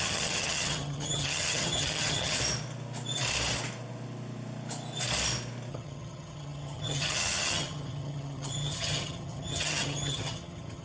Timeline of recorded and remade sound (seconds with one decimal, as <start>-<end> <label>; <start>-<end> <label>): 0.0-2.4 remade; 2.4-5.7 recorded; 5.7-10.8 remade